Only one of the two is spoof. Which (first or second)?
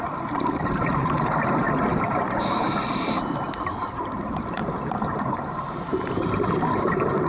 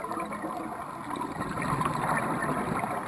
first